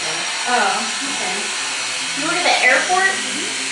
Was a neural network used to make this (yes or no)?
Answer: no